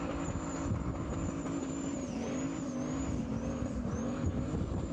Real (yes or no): no